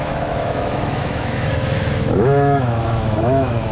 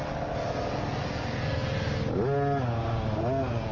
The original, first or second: second